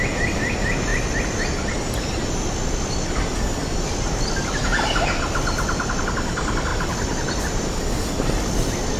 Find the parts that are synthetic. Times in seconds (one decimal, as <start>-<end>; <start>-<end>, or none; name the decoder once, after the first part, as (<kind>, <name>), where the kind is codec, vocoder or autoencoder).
4.7-6.0 (vocoder, BigVGAN v2); 6.7-7.4